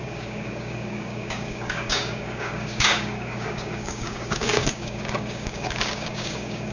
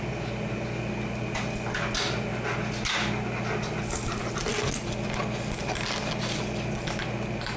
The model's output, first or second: first